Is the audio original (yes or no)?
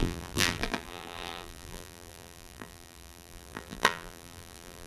no